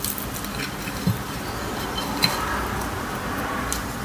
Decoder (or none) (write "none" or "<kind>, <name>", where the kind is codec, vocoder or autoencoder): none